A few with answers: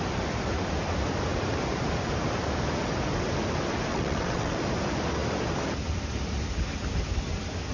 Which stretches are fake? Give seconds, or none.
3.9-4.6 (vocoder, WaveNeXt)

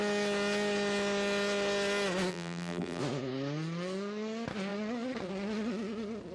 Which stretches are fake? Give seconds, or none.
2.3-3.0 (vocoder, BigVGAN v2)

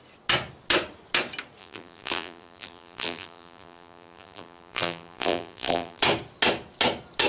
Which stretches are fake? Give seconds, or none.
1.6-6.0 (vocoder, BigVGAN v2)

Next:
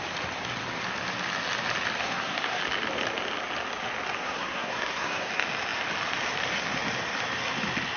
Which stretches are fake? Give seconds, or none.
2.0-2.6 (codec, SNAC); 4.2-5.3

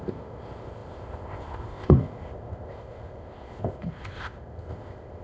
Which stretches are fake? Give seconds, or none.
0.0-5.2 (codec, ZipCodec)